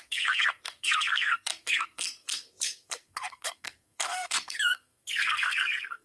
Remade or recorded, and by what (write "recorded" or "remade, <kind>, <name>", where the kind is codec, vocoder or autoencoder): remade, codec, SNAC